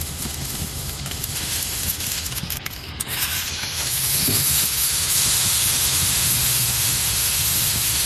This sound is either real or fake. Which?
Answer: fake